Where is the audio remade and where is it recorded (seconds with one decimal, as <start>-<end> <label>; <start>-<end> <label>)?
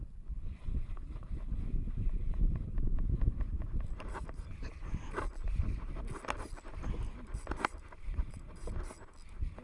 0.0-0.8 recorded; 0.8-5.3 remade; 5.3-7.7 recorded; 7.7-8.7 remade; 8.7-9.6 recorded